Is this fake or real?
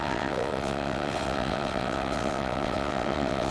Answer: fake